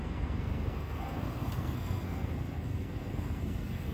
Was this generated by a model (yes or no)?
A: yes